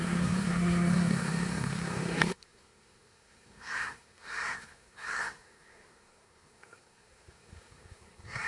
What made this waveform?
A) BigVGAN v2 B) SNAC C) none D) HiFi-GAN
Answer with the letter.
B